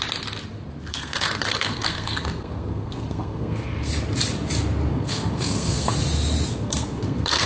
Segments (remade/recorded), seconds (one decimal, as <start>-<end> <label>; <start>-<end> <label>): 0.0-0.9 recorded; 0.9-3.9 remade; 3.9-4.9 recorded; 4.9-5.9 remade; 5.9-6.5 recorded; 6.5-7.5 remade